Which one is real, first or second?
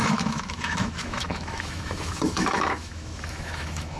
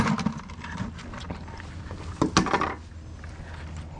second